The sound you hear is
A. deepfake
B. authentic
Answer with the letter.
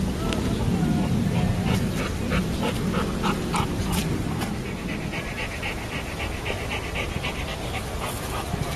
A